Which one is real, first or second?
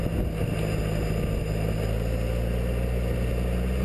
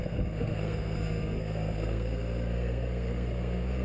first